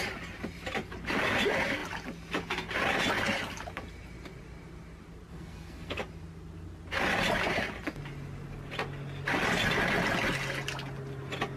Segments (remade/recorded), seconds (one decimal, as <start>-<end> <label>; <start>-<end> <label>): 0.0-5.3 recorded; 5.3-6.0 remade; 6.0-11.6 recorded